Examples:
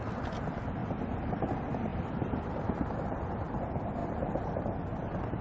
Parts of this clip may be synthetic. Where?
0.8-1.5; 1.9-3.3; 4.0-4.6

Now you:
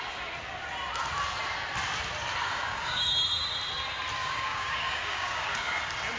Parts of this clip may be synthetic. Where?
2.5-3.0; 4.2-5.8

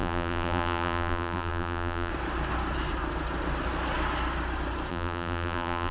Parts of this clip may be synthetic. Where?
0.0-2.1; 4.9-5.9

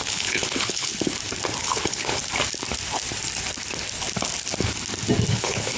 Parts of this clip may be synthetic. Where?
0.0-0.9; 1.6-2.2; 5.3-5.8